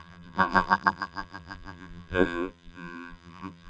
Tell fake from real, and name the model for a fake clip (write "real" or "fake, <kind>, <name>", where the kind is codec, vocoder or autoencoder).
fake, vocoder, BigVGAN v2